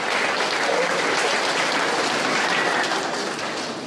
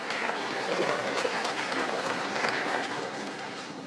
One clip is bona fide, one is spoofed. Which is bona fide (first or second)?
first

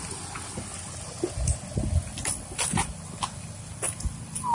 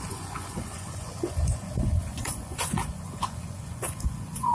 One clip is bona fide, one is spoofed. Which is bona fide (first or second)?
first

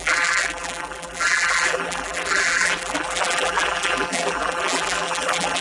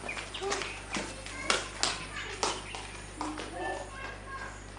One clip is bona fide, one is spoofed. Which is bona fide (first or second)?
second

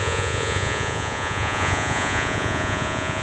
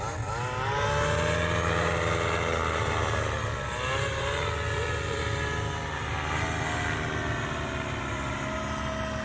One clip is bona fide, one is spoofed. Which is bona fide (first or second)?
second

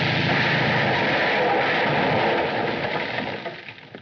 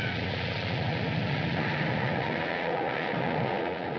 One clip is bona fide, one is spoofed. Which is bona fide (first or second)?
first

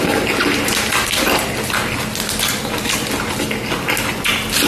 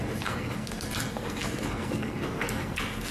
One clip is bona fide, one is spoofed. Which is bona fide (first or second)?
first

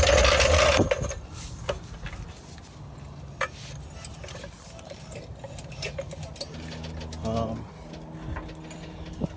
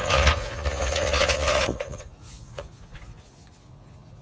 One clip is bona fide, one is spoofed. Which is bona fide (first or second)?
first